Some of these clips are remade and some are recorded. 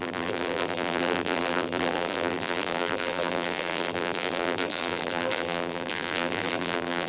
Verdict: remade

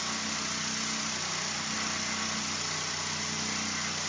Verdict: recorded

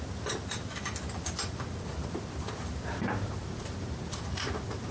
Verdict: recorded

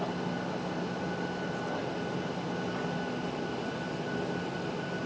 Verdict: recorded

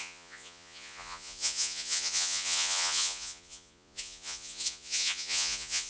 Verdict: remade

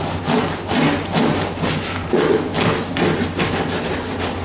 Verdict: recorded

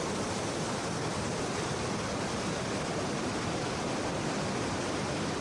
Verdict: recorded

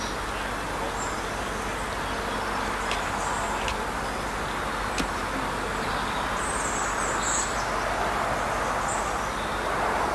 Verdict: recorded